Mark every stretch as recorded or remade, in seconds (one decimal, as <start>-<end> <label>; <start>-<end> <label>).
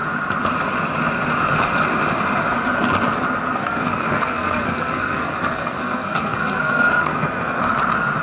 0.0-3.5 recorded; 3.5-7.6 remade; 7.6-8.2 recorded